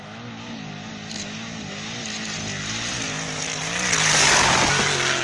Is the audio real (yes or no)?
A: yes